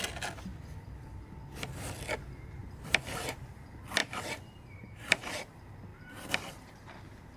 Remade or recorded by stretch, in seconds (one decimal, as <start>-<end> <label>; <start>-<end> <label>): 0.0-2.6 recorded; 2.6-3.3 remade; 3.3-4.0 recorded; 4.0-5.5 remade; 5.5-5.9 recorded; 5.9-6.9 remade; 6.9-7.4 recorded